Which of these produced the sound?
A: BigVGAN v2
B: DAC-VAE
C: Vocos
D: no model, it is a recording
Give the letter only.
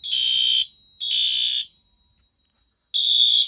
D